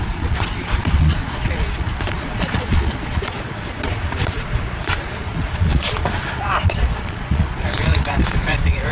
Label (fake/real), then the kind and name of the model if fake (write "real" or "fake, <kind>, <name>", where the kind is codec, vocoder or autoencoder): fake, vocoder, Vocos